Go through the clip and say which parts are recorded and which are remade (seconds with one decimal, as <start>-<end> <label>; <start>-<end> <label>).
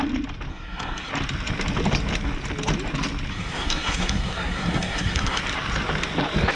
0.0-0.5 recorded; 0.5-1.1 remade; 1.1-3.3 recorded; 3.3-5.4 remade; 5.4-6.5 recorded